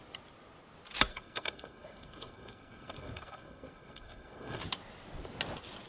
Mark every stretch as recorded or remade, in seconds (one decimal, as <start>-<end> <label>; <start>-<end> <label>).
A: 0.0-1.1 recorded; 1.1-4.6 remade; 4.6-5.9 recorded